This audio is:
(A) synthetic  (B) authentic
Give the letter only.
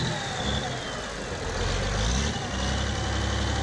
B